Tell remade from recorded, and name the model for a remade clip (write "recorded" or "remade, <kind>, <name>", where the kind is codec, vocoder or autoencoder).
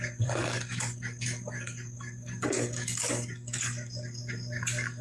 remade, codec, DAC